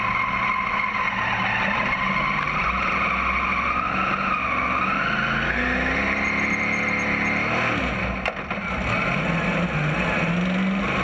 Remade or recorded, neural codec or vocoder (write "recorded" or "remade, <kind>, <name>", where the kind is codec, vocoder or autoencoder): recorded